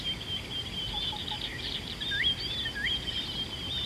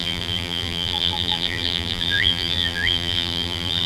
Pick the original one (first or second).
first